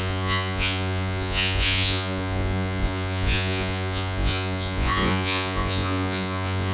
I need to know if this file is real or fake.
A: fake